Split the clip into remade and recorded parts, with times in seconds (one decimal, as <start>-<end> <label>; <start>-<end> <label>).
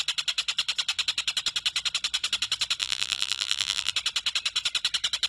0.0-2.8 recorded; 2.8-3.9 remade; 3.9-5.3 recorded